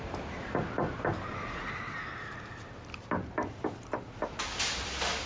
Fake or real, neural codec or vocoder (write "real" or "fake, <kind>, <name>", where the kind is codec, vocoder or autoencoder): real